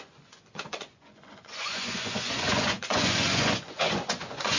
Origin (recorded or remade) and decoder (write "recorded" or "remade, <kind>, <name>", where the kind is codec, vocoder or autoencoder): remade, vocoder, Vocos